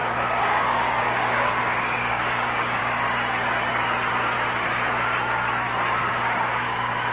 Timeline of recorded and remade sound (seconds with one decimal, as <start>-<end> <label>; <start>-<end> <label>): 0.0-2.8 remade; 2.8-6.0 recorded; 6.0-7.1 remade